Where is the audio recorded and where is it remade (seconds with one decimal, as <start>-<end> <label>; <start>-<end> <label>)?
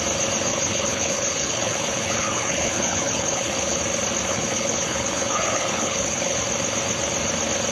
0.0-0.5 recorded; 0.5-3.8 remade; 3.8-4.3 recorded; 4.3-6.4 remade; 6.4-7.7 recorded